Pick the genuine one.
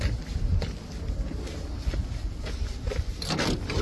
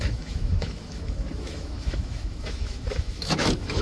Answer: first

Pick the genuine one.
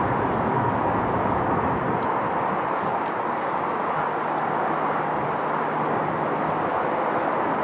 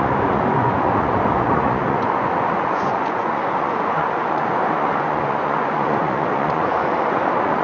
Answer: first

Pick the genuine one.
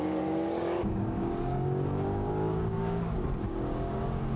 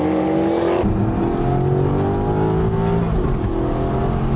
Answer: second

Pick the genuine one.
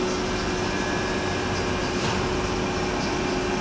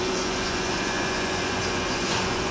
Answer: first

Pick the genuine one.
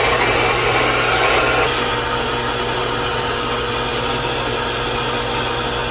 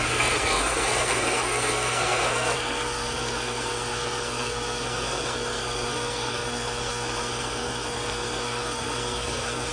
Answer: first